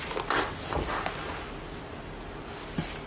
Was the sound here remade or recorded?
recorded